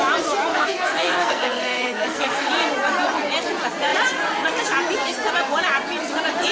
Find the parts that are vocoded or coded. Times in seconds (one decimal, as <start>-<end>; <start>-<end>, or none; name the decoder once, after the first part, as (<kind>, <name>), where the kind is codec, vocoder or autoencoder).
0.5-2.5 (codec, SNAC)